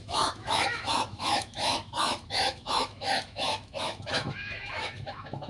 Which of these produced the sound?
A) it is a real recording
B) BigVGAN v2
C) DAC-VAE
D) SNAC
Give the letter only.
C